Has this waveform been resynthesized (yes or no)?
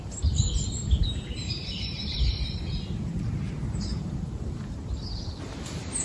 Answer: yes